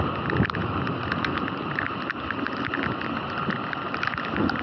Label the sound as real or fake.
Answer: real